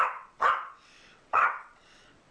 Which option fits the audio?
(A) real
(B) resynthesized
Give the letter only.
B